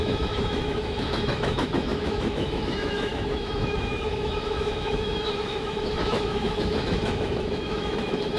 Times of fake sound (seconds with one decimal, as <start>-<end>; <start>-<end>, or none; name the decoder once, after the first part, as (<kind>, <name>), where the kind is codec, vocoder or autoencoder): 0.0-8.4 (autoencoder, DAC-VAE)